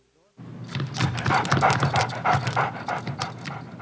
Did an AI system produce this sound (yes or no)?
no